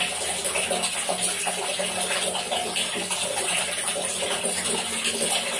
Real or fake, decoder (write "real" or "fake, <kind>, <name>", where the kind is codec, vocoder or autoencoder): real